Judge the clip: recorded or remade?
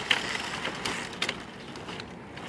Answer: recorded